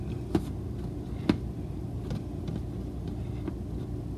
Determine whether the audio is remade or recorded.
recorded